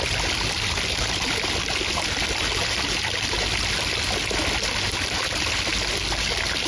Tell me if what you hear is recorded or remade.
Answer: recorded